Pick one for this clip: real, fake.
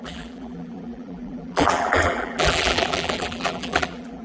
fake